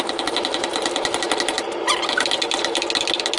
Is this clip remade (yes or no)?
no